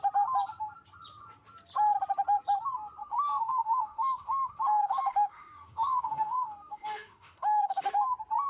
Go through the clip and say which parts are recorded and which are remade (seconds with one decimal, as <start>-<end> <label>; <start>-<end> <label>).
0.0-3.0 recorded; 3.0-7.9 remade; 7.9-8.5 recorded

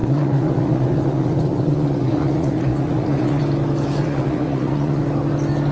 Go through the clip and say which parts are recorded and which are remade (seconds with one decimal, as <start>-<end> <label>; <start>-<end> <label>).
0.0-3.4 remade; 3.4-4.0 recorded; 4.0-5.0 remade; 5.0-5.7 recorded

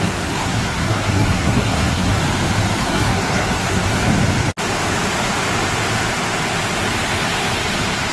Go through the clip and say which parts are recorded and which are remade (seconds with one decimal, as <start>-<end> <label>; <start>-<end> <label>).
0.0-2.2 remade; 2.2-2.8 recorded; 2.8-4.1 remade; 4.1-8.1 recorded

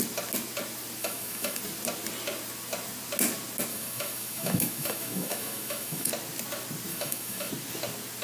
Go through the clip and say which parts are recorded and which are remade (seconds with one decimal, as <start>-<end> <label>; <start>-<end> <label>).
0.0-1.0 recorded; 1.0-1.6 remade; 1.6-3.7 recorded; 3.7-6.1 remade; 6.1-6.9 recorded; 6.9-7.5 remade; 7.5-8.2 recorded

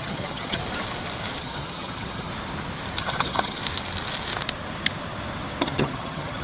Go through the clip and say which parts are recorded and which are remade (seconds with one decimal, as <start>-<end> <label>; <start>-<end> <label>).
0.0-0.6 remade; 0.6-1.4 recorded; 1.4-2.3 remade; 2.3-3.0 recorded; 3.0-3.6 remade; 3.6-5.6 recorded; 5.6-6.4 remade

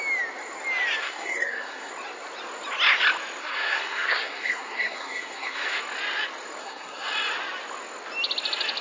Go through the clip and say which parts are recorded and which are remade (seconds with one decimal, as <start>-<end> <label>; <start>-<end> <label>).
0.0-1.0 recorded; 1.0-1.9 remade; 1.9-3.4 recorded; 3.4-5.8 remade; 5.8-6.6 recorded; 6.6-7.1 remade; 7.1-8.8 recorded